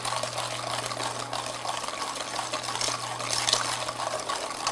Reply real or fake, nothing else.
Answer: real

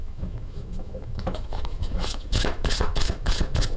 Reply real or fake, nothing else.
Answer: fake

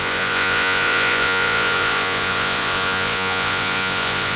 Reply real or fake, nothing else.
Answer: fake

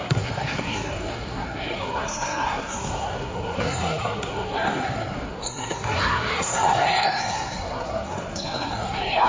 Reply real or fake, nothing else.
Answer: fake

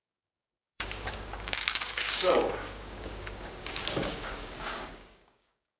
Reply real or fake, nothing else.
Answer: fake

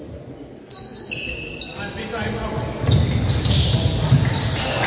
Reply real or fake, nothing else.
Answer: real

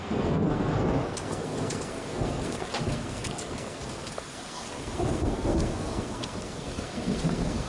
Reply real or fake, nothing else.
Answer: fake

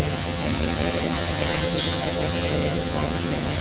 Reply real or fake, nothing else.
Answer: fake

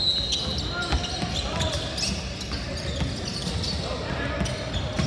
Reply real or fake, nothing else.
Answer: real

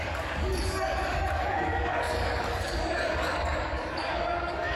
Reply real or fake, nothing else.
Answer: fake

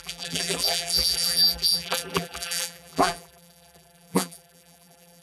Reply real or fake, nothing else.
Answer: fake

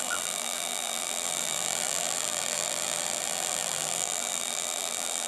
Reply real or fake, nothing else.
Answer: fake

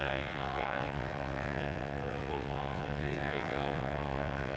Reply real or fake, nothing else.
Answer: fake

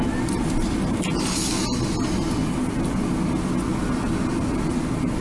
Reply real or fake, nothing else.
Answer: real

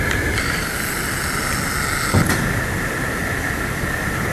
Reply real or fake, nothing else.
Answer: real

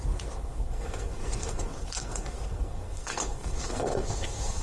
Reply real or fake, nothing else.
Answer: fake